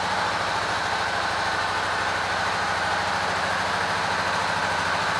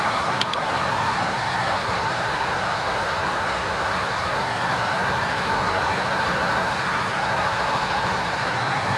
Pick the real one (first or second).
first